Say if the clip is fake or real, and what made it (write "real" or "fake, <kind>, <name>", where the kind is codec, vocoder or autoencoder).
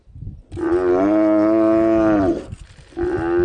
real